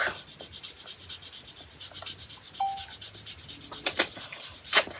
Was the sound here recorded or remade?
recorded